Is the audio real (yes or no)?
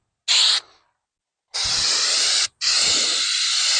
yes